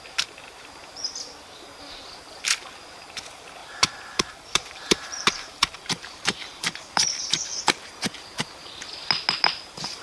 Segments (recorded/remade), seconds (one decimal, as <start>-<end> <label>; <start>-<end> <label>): 0.0-3.6 recorded; 3.6-7.6 remade; 7.6-10.0 recorded